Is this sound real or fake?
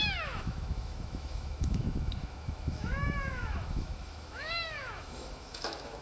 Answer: fake